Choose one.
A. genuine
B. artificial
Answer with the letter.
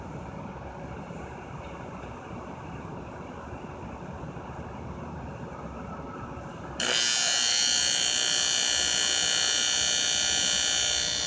A